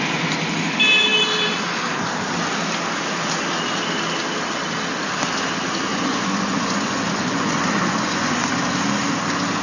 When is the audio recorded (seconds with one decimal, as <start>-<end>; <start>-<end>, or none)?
0.0-5.9; 8.4-9.6